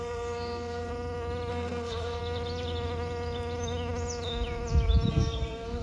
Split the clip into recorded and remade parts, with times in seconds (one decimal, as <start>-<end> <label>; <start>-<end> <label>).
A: 0.0-0.9 remade; 0.9-1.5 recorded; 1.5-2.2 remade; 2.2-5.1 recorded; 5.1-5.8 remade